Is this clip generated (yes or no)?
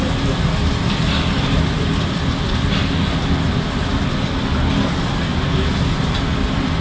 no